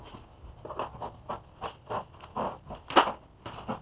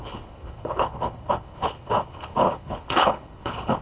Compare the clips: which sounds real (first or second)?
first